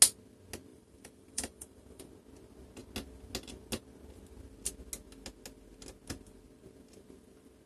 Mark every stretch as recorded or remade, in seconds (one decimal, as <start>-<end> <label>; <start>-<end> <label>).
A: 0.0-0.7 recorded; 0.7-2.1 remade; 2.1-7.7 recorded